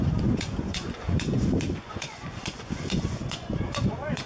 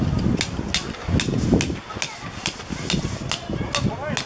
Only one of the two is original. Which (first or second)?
second